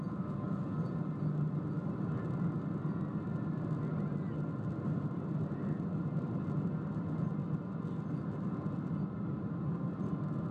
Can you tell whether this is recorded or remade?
recorded